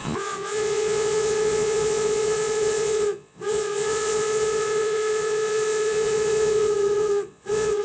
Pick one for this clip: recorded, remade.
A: remade